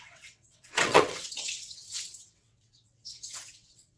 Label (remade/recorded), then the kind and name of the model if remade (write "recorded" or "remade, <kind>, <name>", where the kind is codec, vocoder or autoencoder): remade, vocoder, WaveNeXt